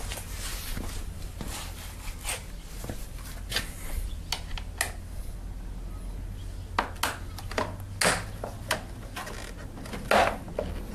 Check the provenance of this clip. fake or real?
real